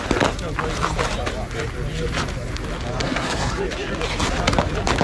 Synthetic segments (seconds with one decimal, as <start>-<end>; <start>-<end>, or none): 3.0-3.5